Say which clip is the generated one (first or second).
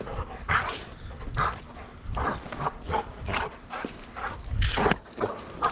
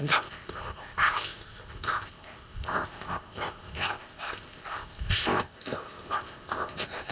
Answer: second